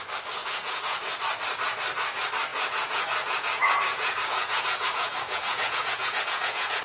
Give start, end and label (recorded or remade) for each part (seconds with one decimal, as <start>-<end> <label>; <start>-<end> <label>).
0.0-0.4 recorded; 0.4-1.1 remade; 1.1-2.5 recorded; 2.5-6.8 remade